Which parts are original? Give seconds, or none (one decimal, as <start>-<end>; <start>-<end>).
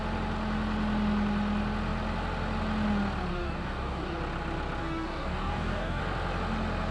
0.0-3.3; 4.2-4.8; 6.0-6.9